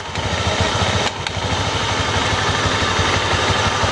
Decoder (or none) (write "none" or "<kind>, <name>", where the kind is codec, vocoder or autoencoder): none